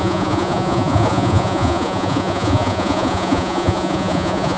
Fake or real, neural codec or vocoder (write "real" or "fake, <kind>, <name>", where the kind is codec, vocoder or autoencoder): fake, vocoder, Vocos